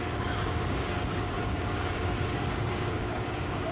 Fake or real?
fake